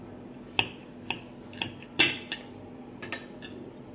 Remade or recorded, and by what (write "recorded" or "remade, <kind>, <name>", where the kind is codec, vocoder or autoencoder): recorded